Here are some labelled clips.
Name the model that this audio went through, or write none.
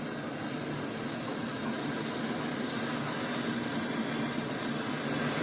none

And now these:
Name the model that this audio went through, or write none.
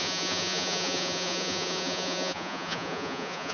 vocoder, Vocos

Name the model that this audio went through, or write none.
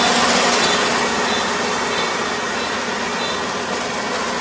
none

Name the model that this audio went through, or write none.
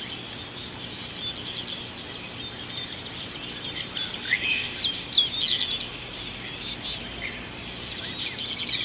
none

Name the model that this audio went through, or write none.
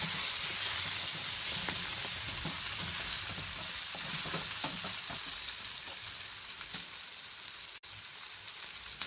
none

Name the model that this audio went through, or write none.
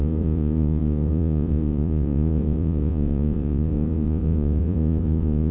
vocoder, Vocos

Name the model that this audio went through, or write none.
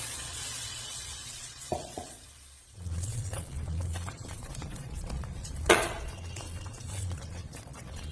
vocoder, Vocos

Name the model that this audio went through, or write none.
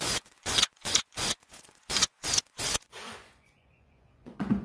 vocoder, Vocos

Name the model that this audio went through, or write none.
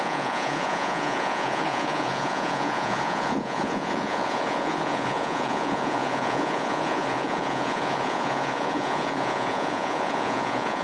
vocoder, Vocos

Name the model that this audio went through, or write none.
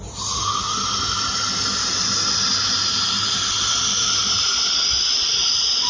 none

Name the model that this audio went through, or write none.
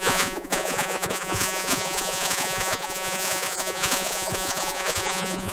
vocoder, Vocos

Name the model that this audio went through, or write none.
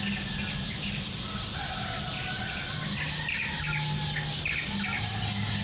none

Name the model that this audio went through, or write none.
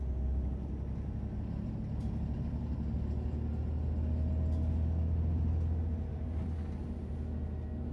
none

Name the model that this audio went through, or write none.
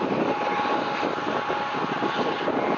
none